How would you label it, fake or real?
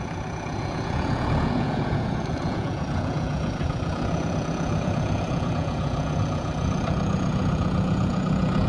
fake